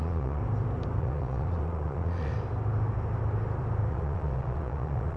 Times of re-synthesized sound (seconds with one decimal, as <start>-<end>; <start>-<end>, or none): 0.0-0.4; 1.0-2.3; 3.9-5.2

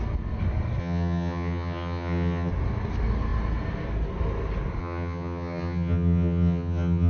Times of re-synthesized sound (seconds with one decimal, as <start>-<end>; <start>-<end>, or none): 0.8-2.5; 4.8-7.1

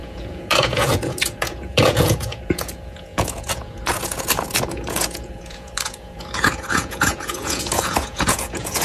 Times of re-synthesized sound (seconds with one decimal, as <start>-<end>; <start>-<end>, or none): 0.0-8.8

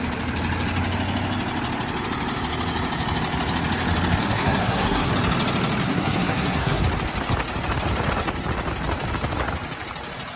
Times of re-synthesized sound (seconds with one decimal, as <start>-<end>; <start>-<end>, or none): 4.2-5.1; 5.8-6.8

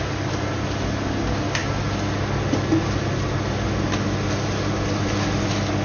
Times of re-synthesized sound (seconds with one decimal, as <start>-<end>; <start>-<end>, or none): none